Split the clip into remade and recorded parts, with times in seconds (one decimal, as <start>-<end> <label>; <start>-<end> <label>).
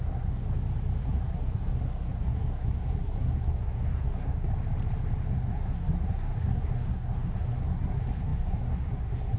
0.0-0.4 remade; 0.4-1.0 recorded; 1.0-4.5 remade; 4.5-5.3 recorded; 5.3-9.4 remade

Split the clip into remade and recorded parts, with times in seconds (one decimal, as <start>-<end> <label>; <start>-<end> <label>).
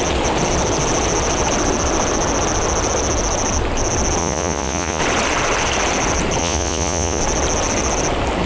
0.0-4.2 recorded; 4.2-5.0 remade; 5.0-6.4 recorded; 6.4-7.2 remade; 7.2-8.5 recorded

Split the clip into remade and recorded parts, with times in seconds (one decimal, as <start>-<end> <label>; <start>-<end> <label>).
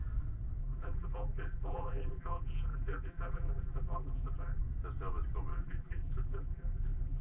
0.0-0.6 recorded; 0.6-4.6 remade; 4.6-5.5 recorded; 5.5-7.2 remade